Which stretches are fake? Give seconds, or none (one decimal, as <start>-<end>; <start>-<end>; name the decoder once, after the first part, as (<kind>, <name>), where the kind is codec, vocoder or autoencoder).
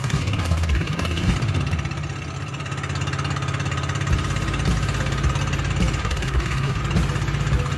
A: 0.0-1.3 (codec, SNAC); 6.0-6.8